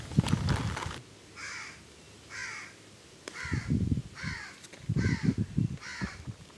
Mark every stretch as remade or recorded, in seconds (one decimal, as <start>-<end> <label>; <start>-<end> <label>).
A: 0.0-6.6 recorded